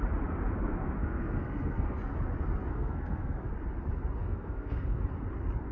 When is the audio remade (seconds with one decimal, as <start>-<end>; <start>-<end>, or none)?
1.0-2.0; 2.7-3.5; 4.2-5.0